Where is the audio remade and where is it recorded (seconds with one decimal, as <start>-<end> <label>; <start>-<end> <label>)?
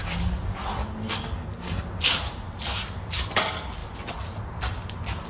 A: 0.0-1.0 recorded; 1.0-1.8 remade; 1.8-5.3 recorded